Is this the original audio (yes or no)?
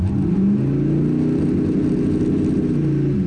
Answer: yes